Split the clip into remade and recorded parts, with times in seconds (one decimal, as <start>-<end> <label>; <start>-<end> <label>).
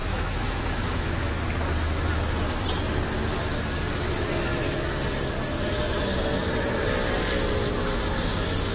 0.0-1.3 remade; 1.3-8.7 recorded